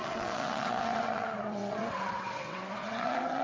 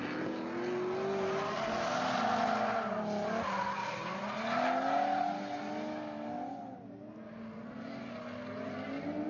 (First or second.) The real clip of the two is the second